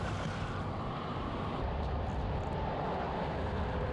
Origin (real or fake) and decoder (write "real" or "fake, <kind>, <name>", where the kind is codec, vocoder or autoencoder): real